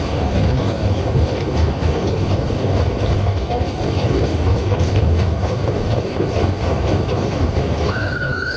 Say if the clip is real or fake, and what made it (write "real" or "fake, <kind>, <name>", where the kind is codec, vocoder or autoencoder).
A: fake, codec, DAC